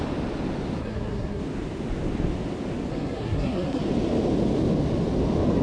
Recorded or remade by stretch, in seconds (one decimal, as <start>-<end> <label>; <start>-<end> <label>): 0.0-0.8 recorded; 0.8-1.4 remade; 1.4-2.9 recorded; 2.9-3.8 remade; 3.8-5.6 recorded